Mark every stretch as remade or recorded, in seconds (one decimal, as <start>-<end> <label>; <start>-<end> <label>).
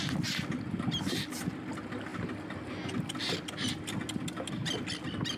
0.0-5.4 recorded